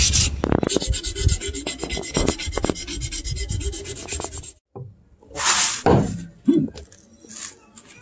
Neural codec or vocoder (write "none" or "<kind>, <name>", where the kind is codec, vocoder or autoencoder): none